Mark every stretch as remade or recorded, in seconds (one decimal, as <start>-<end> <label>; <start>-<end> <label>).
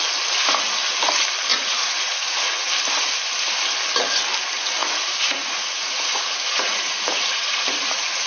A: 0.0-1.5 recorded; 1.5-2.7 remade; 2.7-4.8 recorded; 4.8-8.3 remade